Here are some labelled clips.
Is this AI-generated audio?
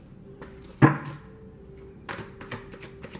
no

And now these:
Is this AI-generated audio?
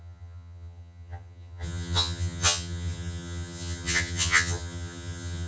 yes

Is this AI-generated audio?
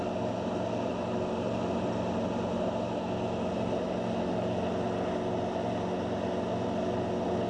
no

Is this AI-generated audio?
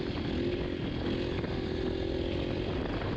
no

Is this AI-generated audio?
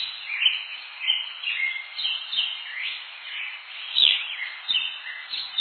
yes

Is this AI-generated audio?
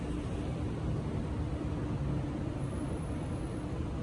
no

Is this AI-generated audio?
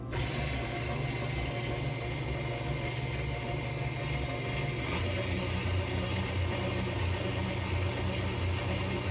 no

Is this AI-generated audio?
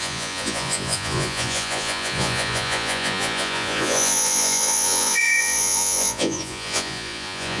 yes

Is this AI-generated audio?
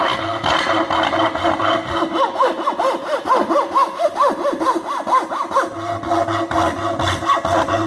no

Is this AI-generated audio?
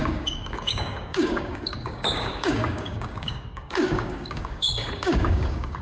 yes